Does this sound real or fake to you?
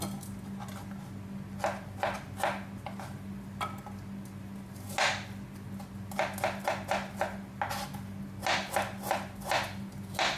real